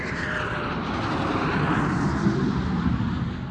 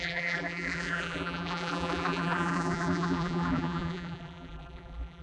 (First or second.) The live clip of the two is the first